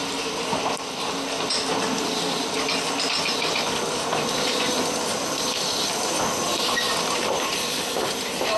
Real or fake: real